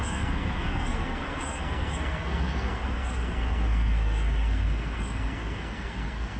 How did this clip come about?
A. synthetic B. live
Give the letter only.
A